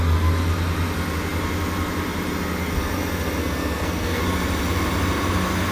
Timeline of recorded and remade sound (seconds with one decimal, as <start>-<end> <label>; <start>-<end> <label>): 0.0-3.4 recorded; 3.4-4.2 remade; 4.2-5.7 recorded